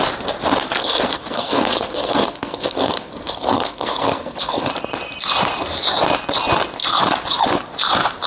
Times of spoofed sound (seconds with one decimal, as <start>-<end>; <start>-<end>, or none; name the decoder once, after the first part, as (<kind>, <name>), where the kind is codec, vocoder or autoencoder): 0.8-4.7 (codec, SNAC)